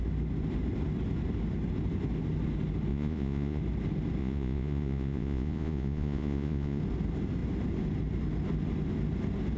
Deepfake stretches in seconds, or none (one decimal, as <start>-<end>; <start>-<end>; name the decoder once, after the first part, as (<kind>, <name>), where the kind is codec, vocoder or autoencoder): 2.9-3.6 (vocoder, Vocos); 4.2-6.8